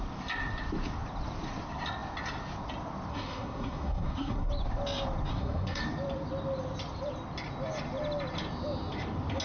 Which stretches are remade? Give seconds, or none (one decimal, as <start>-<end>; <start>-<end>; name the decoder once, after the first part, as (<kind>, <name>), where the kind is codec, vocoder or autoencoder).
3.1-4.5 (codec, SNAC); 5.3-5.8